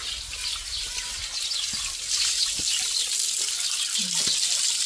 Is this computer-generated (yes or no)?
no